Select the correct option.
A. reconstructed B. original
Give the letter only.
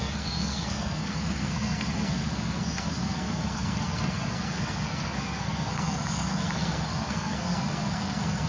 A